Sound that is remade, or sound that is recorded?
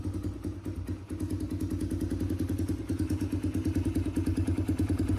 recorded